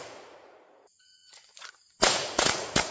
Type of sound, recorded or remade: remade